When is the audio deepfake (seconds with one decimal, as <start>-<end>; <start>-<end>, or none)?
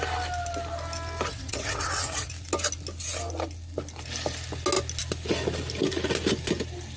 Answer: 1.3-2.3